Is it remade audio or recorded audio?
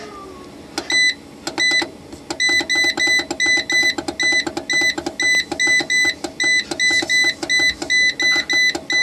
recorded